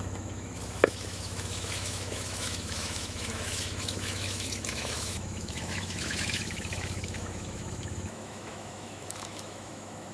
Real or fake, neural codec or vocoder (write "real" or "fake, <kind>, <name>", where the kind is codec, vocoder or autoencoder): fake, autoencoder, DAC-VAE